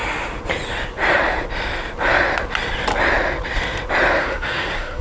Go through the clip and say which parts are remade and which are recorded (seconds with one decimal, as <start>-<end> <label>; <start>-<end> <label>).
0.0-4.2 recorded; 4.2-5.0 remade